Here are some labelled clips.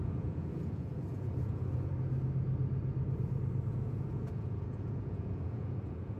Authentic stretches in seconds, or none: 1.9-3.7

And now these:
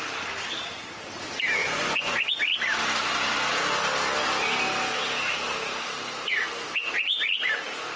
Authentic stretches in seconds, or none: 0.0-1.6; 2.3-8.0

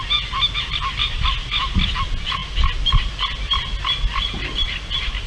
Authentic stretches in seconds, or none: 0.0-5.3